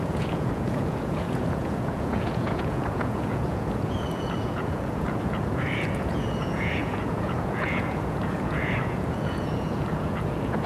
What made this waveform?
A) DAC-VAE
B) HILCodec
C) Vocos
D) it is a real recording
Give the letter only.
C